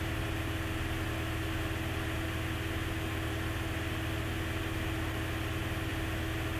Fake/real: real